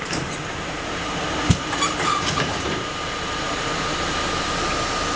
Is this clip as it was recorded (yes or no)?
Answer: no